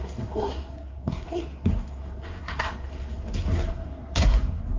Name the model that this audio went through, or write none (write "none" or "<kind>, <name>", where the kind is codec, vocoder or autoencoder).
codec, SNAC